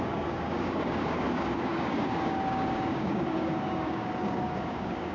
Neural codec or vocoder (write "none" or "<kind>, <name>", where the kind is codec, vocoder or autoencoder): codec, DAC